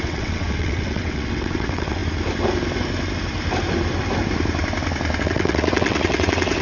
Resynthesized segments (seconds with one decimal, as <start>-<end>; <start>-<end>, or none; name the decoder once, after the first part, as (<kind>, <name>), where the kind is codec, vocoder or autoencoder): 0.0-2.0 (vocoder, WaveNeXt); 5.2-6.6